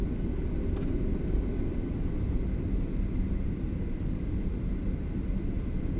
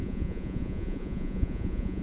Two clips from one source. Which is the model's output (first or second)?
second